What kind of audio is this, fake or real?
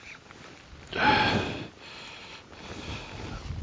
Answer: real